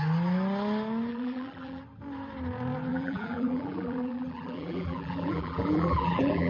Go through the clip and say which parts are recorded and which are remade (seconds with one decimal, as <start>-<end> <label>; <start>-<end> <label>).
0.0-1.1 recorded; 1.1-1.8 remade; 1.8-2.9 recorded; 2.9-6.5 remade